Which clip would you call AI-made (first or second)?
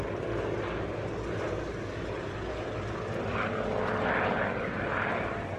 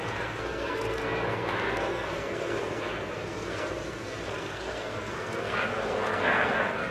second